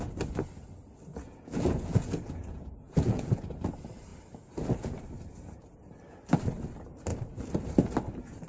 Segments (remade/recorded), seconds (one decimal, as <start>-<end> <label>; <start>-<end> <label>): 0.0-1.1 recorded; 1.1-3.6 remade; 3.6-8.5 recorded